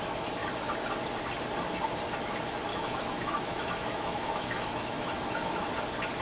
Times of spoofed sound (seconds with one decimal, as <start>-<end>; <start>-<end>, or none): 2.7-5.7